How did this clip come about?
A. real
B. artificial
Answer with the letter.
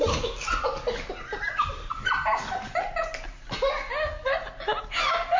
A